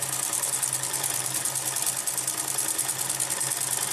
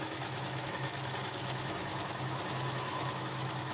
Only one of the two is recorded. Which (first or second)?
first